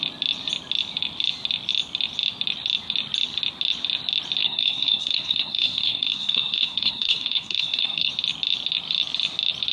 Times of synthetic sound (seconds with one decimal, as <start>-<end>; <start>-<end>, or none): 4.4-8.1